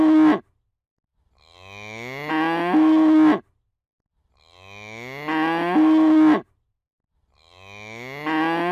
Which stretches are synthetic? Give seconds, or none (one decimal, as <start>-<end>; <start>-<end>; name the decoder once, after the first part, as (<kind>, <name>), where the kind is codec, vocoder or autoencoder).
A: none